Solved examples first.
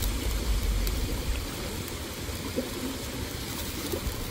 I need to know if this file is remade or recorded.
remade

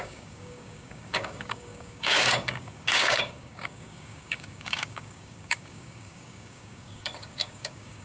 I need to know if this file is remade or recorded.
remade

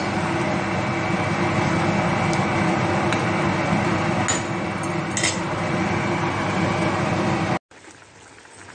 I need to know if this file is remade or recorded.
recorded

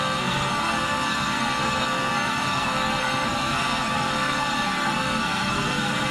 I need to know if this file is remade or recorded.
remade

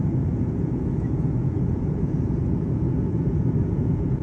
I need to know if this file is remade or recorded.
remade